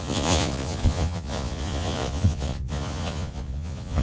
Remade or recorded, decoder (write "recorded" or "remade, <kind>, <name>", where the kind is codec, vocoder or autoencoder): remade, vocoder, Vocos